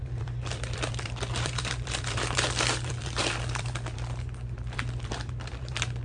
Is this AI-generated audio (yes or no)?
yes